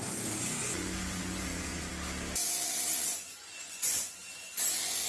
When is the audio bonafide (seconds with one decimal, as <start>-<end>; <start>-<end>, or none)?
1.9-2.4